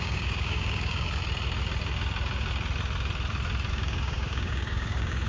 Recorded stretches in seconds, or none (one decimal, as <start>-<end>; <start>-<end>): 1.2-3.7